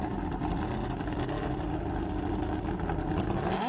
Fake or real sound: real